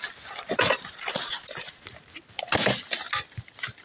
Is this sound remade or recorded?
recorded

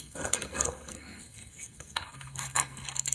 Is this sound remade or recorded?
remade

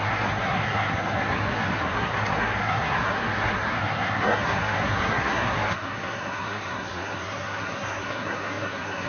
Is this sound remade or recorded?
remade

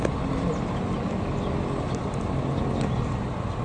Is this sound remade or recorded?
recorded